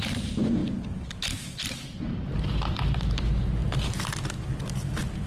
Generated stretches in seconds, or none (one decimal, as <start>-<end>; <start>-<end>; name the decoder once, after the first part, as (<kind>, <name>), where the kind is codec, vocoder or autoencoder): none